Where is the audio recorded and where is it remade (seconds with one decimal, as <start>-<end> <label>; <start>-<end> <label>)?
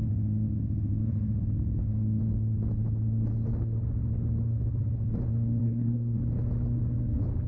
0.0-5.6 recorded; 5.6-6.2 remade; 6.2-7.5 recorded